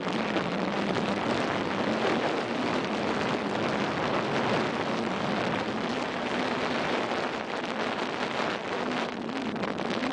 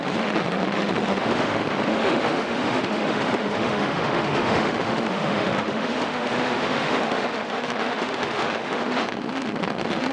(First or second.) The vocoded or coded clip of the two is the second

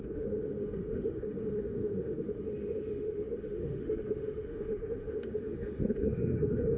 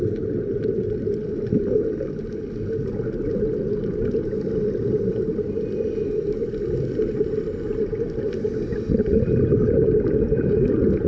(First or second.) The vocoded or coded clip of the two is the first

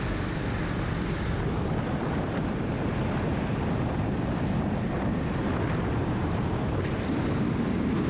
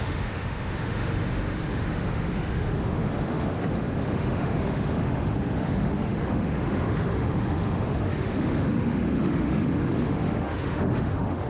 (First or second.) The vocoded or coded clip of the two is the second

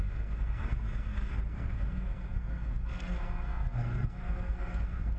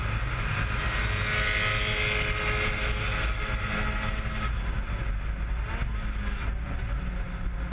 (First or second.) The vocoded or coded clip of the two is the first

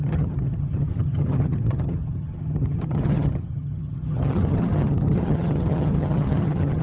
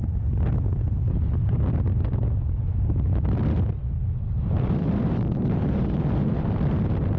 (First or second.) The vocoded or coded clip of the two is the first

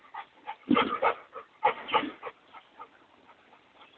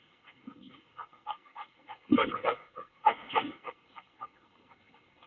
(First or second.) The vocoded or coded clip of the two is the second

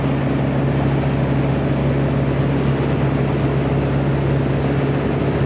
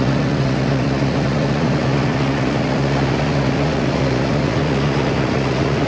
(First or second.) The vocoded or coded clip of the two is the second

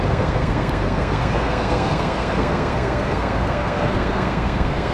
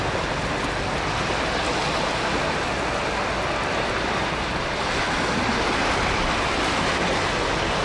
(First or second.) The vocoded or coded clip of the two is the first